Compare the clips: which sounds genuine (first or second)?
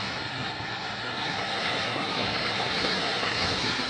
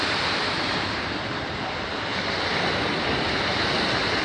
second